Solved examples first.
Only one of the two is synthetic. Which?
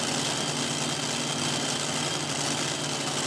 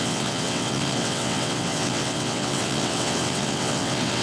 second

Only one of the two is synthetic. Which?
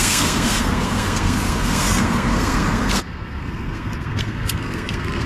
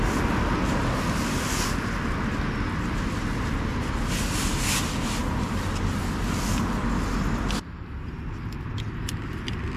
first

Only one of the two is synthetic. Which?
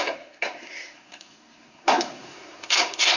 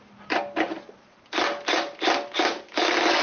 first